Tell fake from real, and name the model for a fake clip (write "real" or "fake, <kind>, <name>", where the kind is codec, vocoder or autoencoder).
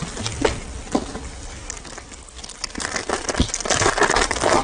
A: real